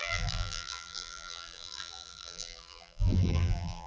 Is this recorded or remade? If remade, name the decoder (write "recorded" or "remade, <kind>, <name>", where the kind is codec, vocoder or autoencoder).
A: remade, vocoder, BigVGAN v2